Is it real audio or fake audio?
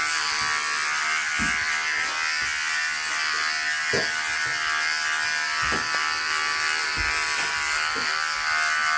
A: real